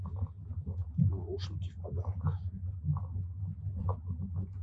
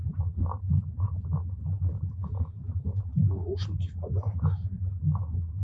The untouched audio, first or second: first